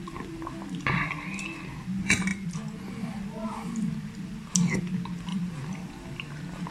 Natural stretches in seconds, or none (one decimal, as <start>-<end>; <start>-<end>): 0.0-5.3